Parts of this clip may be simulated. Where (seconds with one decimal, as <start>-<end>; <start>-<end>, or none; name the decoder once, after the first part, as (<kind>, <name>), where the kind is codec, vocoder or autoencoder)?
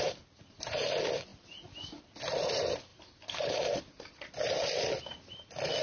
none